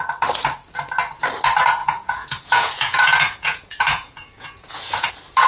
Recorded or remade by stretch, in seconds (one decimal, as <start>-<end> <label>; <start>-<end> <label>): 0.0-1.8 recorded; 1.8-5.1 remade; 5.1-5.5 recorded